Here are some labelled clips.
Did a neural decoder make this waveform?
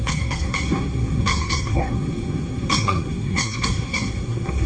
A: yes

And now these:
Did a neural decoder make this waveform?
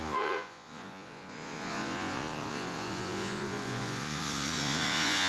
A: yes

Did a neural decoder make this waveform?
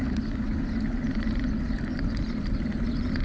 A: no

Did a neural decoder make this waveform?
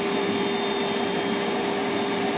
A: no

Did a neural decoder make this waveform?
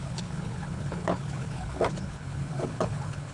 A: yes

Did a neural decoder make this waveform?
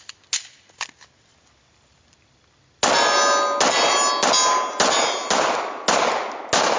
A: no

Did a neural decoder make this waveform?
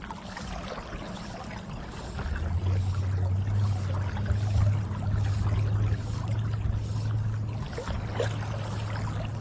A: no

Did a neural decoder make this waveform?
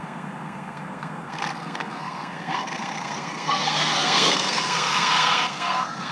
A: yes